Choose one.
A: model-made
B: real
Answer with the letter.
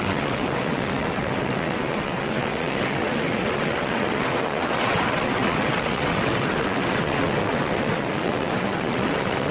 A